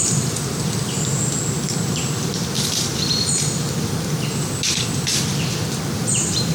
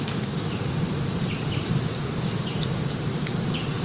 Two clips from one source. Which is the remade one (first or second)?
second